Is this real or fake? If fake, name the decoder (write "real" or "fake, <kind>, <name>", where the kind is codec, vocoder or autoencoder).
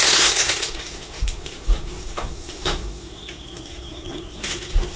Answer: fake, codec, SNAC